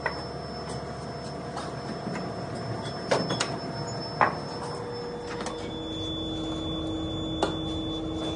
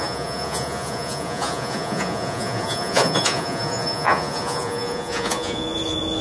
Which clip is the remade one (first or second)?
second